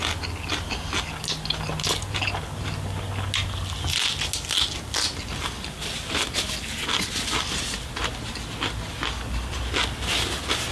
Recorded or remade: recorded